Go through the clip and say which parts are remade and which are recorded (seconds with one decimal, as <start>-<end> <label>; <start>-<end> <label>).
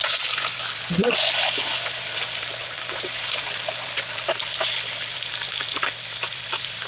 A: 0.0-2.6 recorded; 2.6-3.4 remade; 3.4-6.9 recorded